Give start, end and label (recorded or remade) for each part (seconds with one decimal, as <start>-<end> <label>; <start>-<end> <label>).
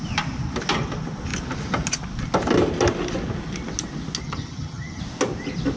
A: 0.0-4.2 recorded; 4.2-5.0 remade; 5.0-5.8 recorded